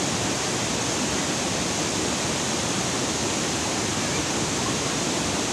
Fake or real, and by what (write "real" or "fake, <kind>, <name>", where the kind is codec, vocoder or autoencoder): real